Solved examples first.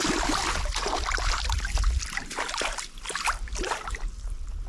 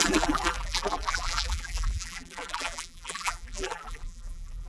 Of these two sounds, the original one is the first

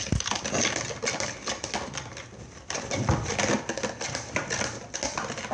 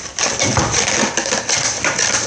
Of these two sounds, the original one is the first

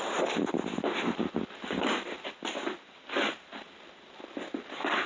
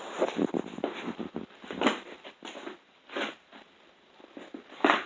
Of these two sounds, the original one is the first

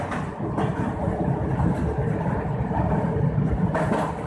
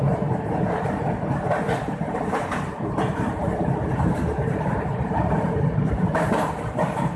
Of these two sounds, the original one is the first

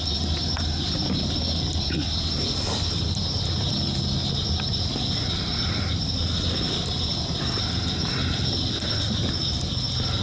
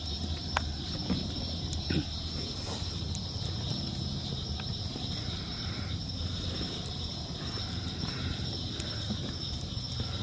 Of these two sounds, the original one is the first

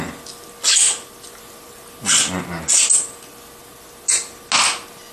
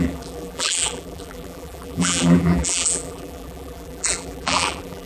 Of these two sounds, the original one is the first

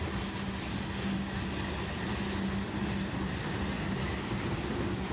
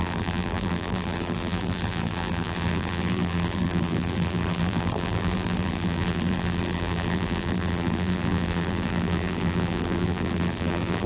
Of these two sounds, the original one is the first